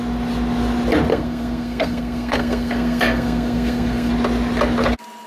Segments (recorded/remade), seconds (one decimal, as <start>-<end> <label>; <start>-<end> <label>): 0.0-1.1 recorded; 1.1-4.1 remade; 4.1-5.3 recorded